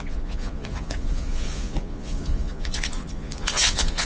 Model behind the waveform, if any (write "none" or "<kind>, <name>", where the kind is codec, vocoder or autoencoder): vocoder, Vocos